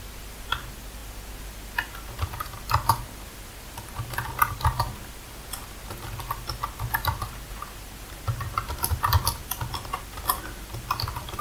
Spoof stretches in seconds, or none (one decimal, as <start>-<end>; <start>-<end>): none